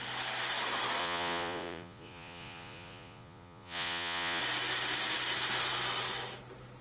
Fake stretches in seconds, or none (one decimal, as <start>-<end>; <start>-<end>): 1.0-4.4